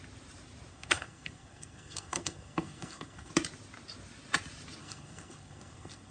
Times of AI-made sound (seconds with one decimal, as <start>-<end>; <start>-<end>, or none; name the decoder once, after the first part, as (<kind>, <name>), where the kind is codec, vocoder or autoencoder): 0.7-3.3 (codec, SNAC); 4.8-6.1